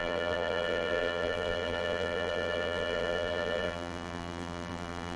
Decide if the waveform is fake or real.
fake